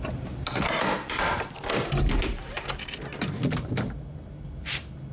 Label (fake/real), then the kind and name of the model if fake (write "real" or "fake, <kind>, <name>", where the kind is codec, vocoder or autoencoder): real